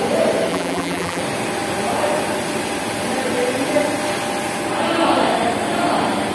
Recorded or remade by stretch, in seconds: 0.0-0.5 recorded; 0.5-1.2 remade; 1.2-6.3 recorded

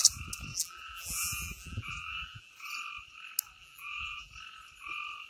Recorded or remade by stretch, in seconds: 0.0-0.5 recorded; 0.5-2.5 remade; 2.5-3.6 recorded; 3.6-4.3 remade; 4.3-5.3 recorded

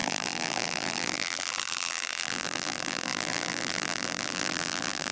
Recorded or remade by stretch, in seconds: 0.0-5.1 remade

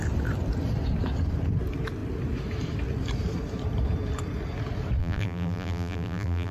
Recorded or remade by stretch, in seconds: 0.0-5.0 recorded; 5.0-6.5 remade

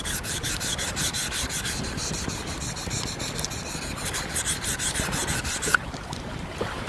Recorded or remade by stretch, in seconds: 0.0-1.2 remade; 1.2-3.8 recorded; 3.8-6.9 remade

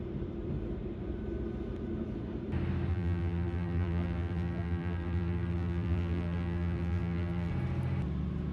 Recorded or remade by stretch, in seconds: 0.0-2.9 recorded; 2.9-7.5 remade; 7.5-8.5 recorded